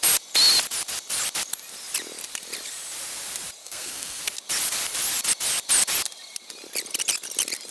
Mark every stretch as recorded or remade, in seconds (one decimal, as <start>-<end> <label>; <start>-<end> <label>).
0.0-3.6 recorded; 3.6-4.2 remade; 4.2-7.7 recorded